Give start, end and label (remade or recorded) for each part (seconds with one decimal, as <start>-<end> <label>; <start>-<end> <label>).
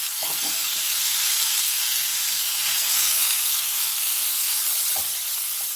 0.0-4.6 remade; 4.6-5.8 recorded